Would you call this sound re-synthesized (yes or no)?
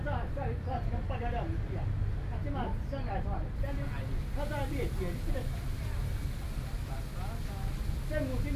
no